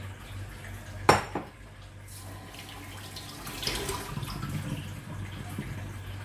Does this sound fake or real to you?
real